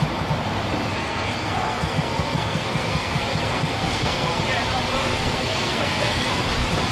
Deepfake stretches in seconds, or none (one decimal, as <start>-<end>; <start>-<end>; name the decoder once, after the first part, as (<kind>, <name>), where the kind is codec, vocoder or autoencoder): 0.9-4.4 (codec, SNAC); 5.0-6.4